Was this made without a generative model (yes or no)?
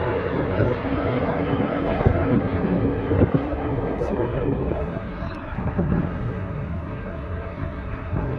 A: no